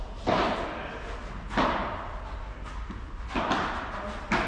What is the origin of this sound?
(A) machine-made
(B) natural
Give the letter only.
B